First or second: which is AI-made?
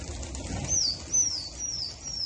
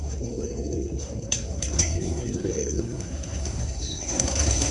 second